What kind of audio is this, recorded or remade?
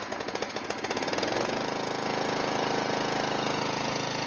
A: remade